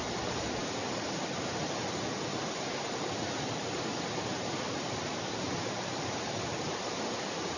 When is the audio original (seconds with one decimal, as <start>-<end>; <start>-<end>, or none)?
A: 0.0-7.6